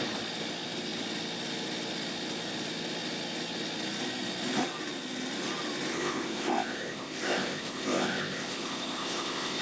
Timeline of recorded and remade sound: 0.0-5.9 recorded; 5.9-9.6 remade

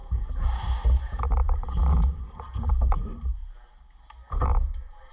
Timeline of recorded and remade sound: 0.0-1.2 recorded; 1.2-3.4 remade; 3.4-5.1 recorded

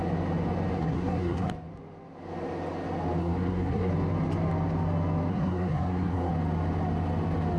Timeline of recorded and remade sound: 0.0-0.7 recorded; 0.7-1.5 remade; 1.5-3.2 recorded; 3.2-3.9 remade; 3.9-5.3 recorded; 5.3-6.3 remade; 6.3-7.6 recorded